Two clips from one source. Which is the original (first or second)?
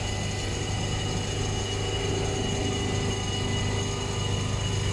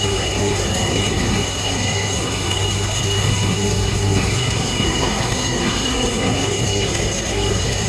first